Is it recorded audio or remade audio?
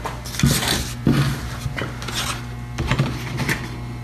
recorded